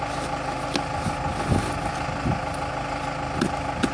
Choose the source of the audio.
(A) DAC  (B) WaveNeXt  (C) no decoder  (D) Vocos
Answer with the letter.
C